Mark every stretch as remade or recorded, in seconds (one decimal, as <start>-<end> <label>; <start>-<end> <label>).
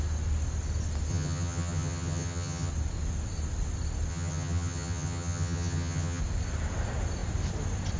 0.0-1.1 recorded; 1.1-2.7 remade; 2.7-4.1 recorded; 4.1-6.2 remade; 6.2-8.0 recorded